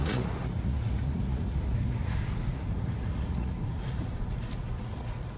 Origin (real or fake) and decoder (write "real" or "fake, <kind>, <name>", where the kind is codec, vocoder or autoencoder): fake, vocoder, Vocos